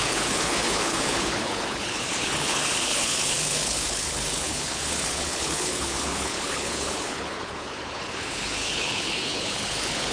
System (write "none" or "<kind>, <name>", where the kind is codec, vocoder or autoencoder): codec, HILCodec